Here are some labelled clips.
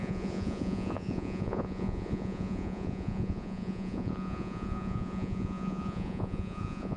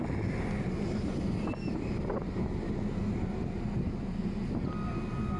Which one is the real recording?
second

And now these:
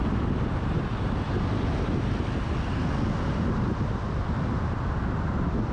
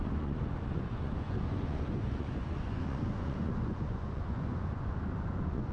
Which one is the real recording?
first